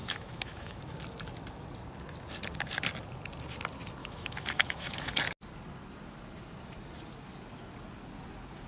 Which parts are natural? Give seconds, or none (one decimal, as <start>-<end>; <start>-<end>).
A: 0.8-4.0; 5.1-8.7